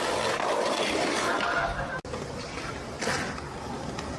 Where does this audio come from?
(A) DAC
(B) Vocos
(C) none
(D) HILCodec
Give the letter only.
C